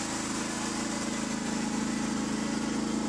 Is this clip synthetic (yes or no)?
no